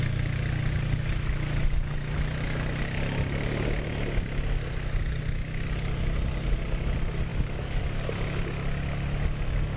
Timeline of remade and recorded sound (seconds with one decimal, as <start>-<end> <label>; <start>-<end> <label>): 0.0-7.3 recorded; 7.3-7.8 remade; 7.8-9.8 recorded